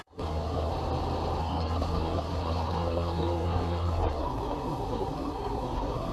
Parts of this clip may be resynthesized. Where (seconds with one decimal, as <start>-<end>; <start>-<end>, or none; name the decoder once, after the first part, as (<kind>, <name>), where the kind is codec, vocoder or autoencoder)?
0.0-0.7 (codec, SNAC); 1.4-6.1